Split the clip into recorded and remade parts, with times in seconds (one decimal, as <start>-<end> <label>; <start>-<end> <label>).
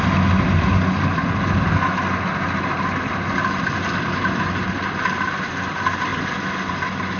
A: 0.0-7.2 recorded